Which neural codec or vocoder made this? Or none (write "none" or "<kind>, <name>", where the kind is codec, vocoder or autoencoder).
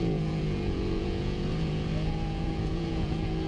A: vocoder, Vocos